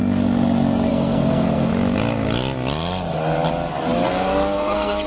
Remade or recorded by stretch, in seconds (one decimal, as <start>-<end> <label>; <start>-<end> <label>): 0.0-0.9 recorded; 0.9-1.7 remade; 1.7-4.1 recorded; 4.1-5.1 remade